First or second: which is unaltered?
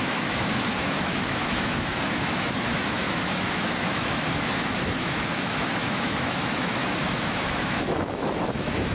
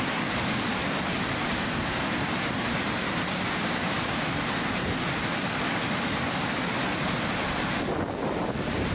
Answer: second